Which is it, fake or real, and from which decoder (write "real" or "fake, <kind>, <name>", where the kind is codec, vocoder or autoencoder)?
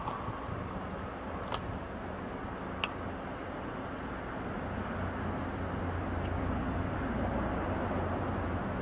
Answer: real